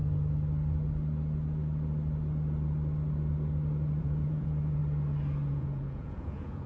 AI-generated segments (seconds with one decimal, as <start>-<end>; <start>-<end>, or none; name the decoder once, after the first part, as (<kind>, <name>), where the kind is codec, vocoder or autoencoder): 4.0-4.8 (vocoder, Vocos); 5.5-6.7